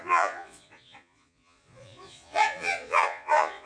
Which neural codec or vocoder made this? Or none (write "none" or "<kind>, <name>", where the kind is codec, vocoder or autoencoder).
vocoder, Vocos